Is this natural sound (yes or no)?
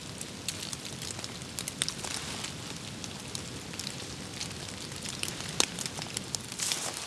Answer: yes